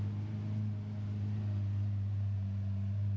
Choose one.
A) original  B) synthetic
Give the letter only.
A